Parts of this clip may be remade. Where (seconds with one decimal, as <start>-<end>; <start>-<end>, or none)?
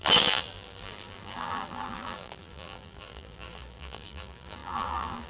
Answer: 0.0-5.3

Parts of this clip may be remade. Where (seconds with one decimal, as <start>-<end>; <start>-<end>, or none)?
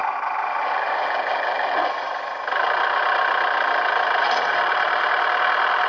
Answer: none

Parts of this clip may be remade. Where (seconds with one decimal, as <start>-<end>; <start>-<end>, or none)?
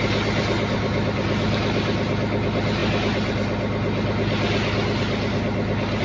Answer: none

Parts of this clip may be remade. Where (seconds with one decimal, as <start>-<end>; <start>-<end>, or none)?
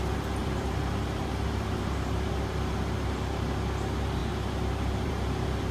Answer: 0.4-2.3; 4.2-5.1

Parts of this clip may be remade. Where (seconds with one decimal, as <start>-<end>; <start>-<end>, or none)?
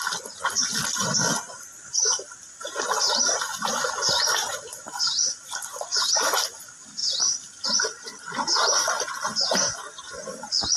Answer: 0.0-10.8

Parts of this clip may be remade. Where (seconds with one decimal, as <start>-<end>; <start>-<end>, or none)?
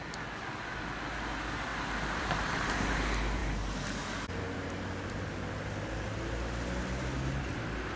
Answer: 1.7-2.5